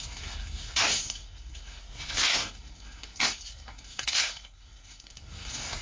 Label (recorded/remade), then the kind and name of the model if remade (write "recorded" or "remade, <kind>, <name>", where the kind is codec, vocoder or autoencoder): remade, codec, SNAC